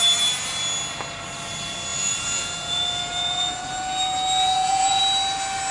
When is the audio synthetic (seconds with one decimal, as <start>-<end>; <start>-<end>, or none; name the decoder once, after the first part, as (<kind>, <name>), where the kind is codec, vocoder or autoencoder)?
1.9-5.0 (vocoder, Vocos)